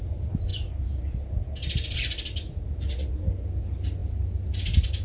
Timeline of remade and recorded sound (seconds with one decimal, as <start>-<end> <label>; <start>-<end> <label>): 0.0-5.0 recorded